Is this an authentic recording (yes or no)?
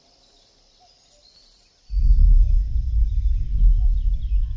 yes